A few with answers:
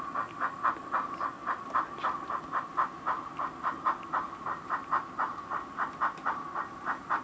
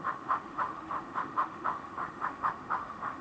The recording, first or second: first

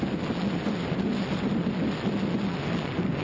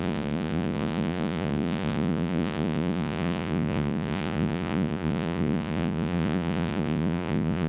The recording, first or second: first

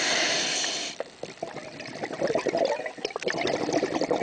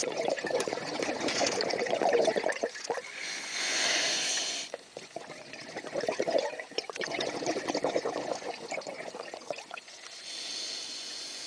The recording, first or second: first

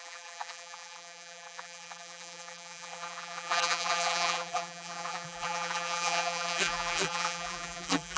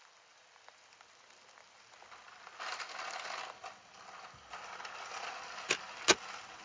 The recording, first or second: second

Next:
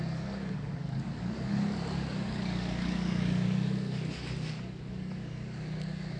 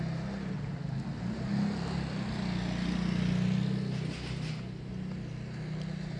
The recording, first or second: second